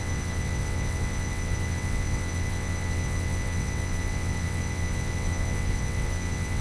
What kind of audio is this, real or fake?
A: fake